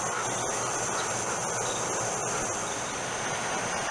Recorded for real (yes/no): yes